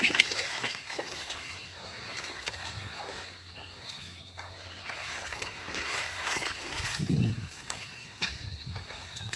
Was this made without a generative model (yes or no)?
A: no